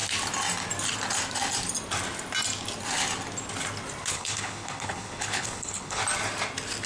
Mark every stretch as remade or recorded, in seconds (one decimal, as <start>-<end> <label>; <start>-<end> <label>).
0.0-4.1 recorded; 4.1-6.0 remade; 6.0-6.9 recorded